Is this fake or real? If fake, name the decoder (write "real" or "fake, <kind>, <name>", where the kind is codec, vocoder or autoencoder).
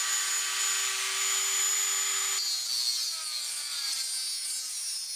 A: real